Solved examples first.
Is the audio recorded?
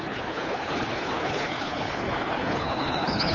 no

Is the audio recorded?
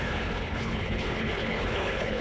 no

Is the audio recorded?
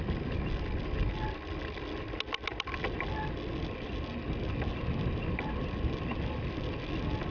yes